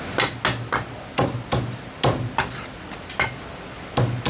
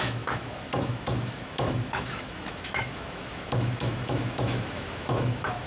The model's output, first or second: second